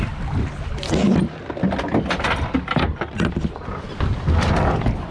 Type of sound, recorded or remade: recorded